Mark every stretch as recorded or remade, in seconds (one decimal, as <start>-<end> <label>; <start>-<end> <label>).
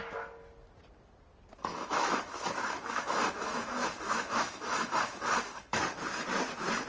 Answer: 0.0-1.7 recorded; 1.7-5.8 remade; 5.8-6.9 recorded